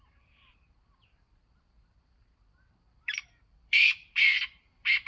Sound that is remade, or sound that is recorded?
remade